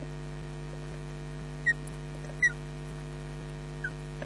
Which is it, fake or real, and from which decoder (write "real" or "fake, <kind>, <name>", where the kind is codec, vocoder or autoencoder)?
real